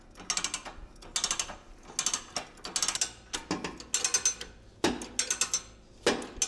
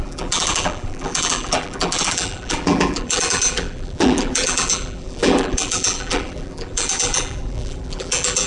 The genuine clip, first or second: first